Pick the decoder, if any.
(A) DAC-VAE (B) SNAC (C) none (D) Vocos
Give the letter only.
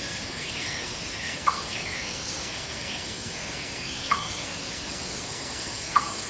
B